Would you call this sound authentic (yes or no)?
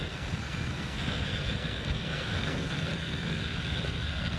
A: no